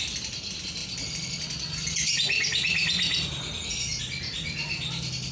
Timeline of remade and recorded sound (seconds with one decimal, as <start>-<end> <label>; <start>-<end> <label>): 0.0-5.3 recorded